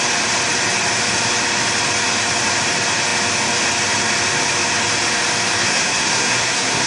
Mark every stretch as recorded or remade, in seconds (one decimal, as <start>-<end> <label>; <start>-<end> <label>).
0.0-5.6 recorded; 5.6-6.9 remade